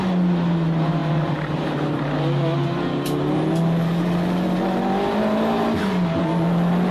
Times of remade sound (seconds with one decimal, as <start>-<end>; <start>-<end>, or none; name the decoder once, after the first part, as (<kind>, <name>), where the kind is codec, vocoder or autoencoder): none